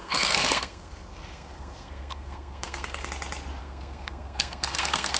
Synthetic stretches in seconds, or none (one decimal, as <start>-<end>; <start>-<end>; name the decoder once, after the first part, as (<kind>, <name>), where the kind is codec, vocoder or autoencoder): 0.0-3.1 (codec, SNAC); 3.6-5.2